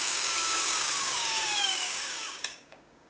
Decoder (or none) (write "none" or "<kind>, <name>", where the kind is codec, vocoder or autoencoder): codec, DAC